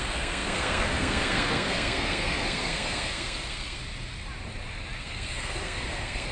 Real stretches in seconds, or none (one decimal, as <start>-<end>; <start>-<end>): 3.8-5.0